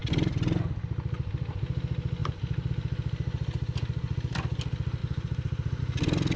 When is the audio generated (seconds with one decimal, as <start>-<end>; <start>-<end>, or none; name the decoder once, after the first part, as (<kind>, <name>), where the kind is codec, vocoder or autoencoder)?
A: 2.2-2.7 (vocoder, BigVGAN v2); 5.0-5.8